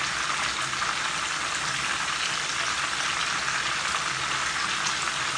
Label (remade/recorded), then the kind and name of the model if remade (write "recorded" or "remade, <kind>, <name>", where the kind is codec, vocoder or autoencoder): recorded